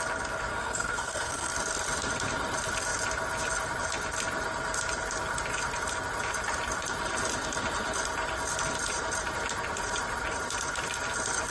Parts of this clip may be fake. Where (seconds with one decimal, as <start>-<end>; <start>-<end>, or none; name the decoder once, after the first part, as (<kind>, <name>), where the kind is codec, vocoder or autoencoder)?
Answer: 0.5-1.5 (codec, SNAC)